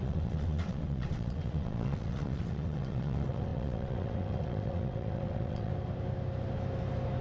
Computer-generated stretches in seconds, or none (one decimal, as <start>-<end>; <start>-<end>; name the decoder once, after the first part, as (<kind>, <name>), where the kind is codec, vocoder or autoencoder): 0.0-5.7 (vocoder, WaveNeXt)